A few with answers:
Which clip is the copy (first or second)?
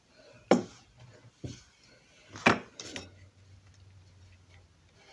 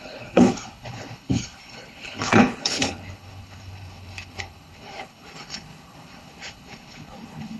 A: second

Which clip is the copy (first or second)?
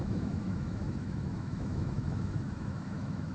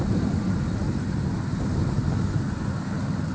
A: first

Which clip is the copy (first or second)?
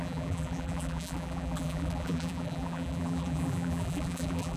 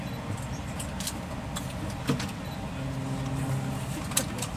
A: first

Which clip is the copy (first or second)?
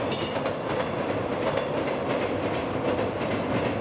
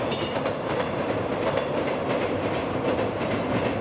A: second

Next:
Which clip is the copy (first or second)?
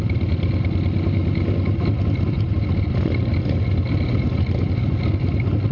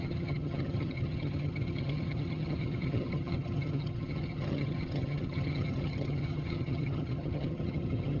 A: second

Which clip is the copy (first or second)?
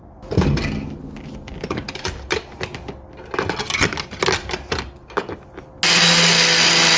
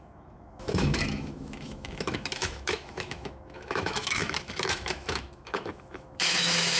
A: second